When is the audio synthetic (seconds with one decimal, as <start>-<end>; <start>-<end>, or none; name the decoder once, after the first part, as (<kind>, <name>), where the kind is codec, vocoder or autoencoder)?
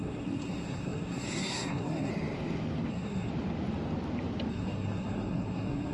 0.0-2.1 (codec, SNAC); 2.9-3.3; 4.5-5.9